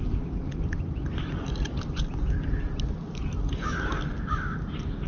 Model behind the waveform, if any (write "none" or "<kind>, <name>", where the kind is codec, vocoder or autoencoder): none